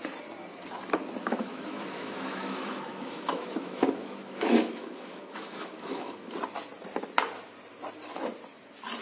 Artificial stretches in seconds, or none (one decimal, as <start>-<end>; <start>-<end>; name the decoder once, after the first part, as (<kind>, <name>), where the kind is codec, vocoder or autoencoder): 1.2-6.3 (autoencoder, DAC-VAE)